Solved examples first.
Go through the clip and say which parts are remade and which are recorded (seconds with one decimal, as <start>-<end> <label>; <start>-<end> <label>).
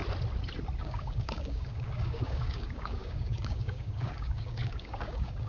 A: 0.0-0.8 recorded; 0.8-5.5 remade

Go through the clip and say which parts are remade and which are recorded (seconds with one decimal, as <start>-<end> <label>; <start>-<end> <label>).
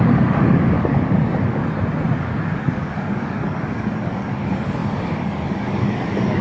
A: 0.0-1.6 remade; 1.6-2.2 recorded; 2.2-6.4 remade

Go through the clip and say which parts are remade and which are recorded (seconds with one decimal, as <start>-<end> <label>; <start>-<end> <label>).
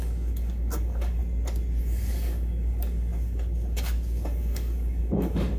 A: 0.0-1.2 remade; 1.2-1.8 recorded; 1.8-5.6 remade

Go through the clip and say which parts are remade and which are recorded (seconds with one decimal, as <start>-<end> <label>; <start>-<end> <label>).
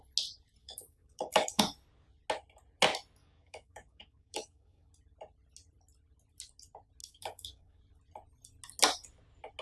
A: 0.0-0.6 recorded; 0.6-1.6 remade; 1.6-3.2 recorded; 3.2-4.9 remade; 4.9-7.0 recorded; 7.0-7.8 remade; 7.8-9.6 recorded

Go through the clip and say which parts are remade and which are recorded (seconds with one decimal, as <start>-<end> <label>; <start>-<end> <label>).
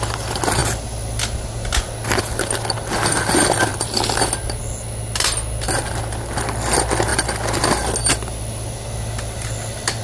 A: 0.0-10.0 recorded